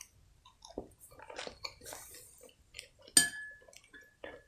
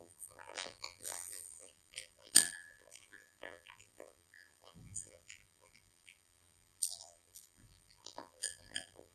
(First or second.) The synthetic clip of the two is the second